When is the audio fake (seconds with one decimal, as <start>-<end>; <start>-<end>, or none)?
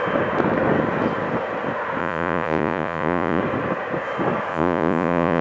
2.0-3.4; 4.5-5.4